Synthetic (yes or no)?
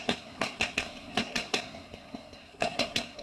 yes